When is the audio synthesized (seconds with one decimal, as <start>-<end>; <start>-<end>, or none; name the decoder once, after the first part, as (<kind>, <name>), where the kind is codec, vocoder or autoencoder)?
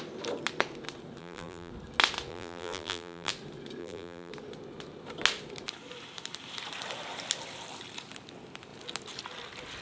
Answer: 1.2-1.7 (vocoder, BigVGAN v2); 2.3-3.3; 3.8-4.3